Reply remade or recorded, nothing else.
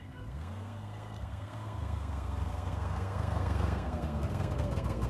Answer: remade